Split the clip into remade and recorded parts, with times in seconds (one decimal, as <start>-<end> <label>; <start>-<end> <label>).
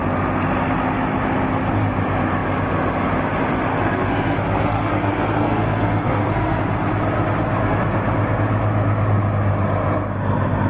0.0-3.7 recorded; 3.7-6.6 remade; 6.6-10.7 recorded